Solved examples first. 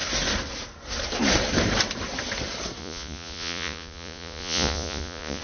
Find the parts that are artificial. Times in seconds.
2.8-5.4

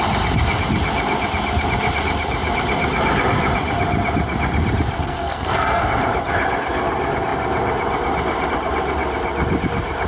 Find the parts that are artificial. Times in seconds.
5.0-5.9

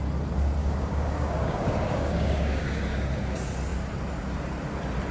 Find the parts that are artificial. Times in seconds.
0.6-3.1

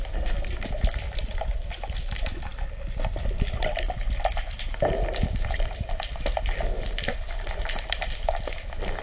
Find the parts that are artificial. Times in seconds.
none

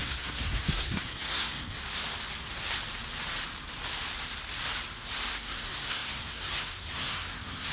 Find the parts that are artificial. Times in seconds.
0.0-1.8; 5.3-7.7

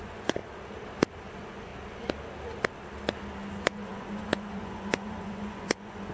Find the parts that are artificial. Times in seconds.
0.0-0.4; 1.1-1.7; 3.5-6.1

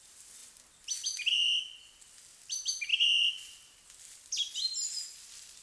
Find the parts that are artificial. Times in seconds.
none